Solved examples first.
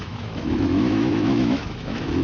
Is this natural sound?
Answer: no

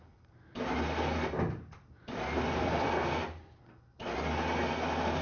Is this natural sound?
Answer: yes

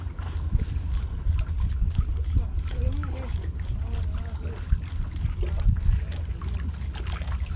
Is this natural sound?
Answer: yes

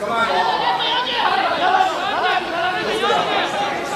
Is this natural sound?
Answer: yes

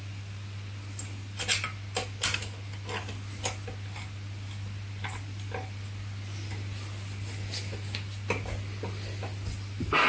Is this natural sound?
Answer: yes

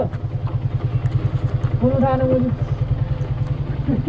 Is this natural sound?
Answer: yes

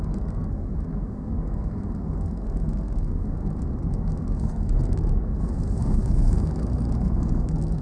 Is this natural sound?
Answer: no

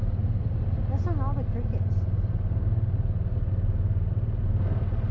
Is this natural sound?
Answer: yes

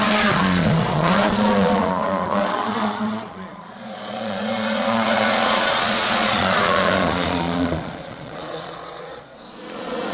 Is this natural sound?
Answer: no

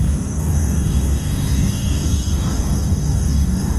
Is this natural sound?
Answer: no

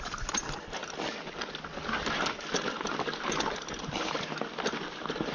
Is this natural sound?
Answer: yes